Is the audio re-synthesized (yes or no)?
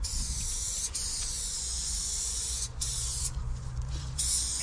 yes